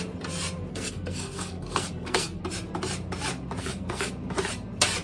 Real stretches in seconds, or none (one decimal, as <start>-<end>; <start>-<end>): 0.0-0.7; 2.4-3.6; 4.1-5.0

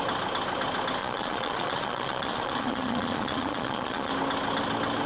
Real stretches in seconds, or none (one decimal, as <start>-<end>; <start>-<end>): 0.0-1.0; 4.1-5.1

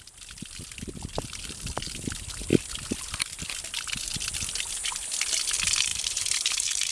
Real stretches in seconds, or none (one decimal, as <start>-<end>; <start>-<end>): 0.0-5.9